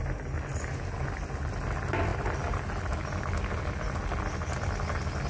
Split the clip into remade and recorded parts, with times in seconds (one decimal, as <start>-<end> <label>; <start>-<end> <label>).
0.0-5.3 recorded